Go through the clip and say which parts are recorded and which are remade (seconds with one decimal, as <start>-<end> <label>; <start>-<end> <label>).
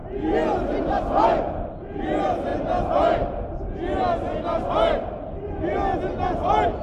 0.0-6.8 recorded